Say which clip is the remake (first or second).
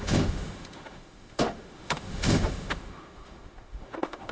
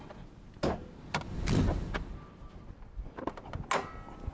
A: first